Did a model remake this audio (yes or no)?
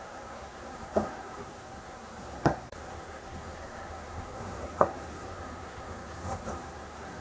yes